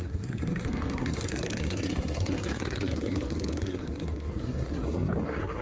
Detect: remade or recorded remade